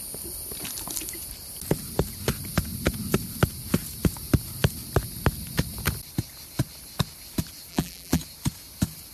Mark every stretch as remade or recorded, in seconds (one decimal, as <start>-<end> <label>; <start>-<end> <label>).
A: 0.0-7.7 recorded; 7.7-8.2 remade; 8.2-9.1 recorded